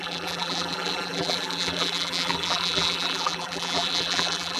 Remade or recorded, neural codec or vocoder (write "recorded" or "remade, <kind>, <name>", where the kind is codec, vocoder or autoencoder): remade, vocoder, BigVGAN v2